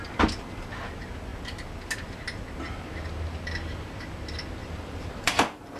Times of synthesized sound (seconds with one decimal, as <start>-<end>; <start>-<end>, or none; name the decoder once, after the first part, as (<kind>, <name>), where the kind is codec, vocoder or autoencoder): 4.6-5.8 (vocoder, BigVGAN v2)